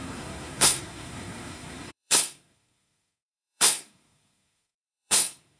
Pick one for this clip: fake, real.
fake